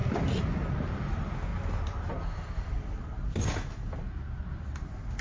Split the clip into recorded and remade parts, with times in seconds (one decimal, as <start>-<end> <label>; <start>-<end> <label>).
0.0-5.2 recorded